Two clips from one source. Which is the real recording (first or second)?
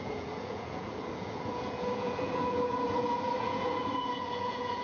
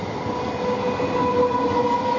second